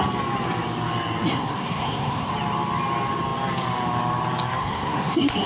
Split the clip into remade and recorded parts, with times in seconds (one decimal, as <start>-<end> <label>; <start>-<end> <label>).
0.0-1.3 recorded; 1.3-2.3 remade; 2.3-4.6 recorded; 4.6-5.5 remade